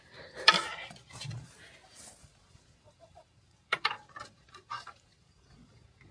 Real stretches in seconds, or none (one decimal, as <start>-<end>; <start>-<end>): 0.0-0.7; 1.5-2.2